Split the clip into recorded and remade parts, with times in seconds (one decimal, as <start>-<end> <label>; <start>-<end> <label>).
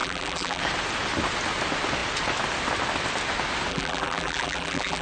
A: 0.0-0.6 remade; 0.6-3.7 recorded; 3.7-5.0 remade